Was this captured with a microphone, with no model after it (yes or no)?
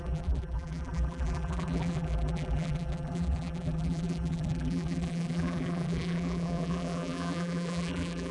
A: no